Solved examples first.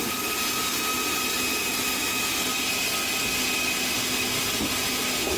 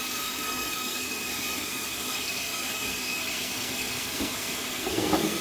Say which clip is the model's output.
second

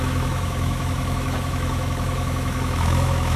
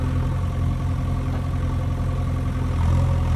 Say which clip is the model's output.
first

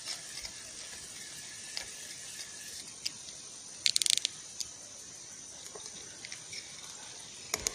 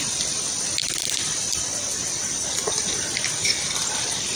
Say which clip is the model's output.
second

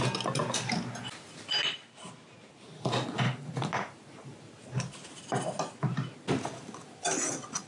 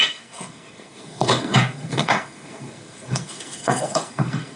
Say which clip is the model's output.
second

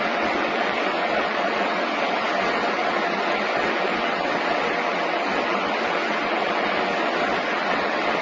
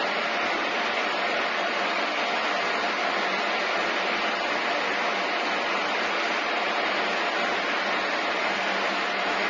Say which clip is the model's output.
first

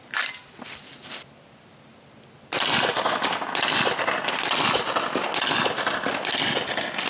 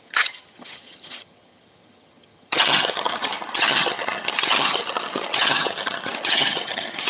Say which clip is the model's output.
second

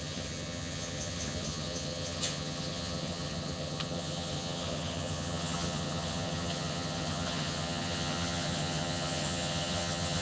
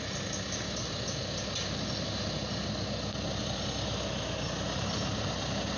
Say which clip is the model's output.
first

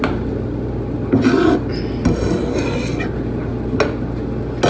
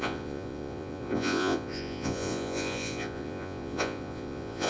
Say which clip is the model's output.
second